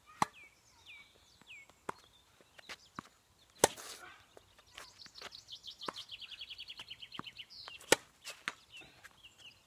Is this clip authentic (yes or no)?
yes